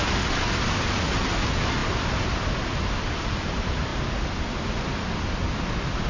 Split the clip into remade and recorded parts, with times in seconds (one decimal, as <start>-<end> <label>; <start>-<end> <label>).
0.0-6.1 recorded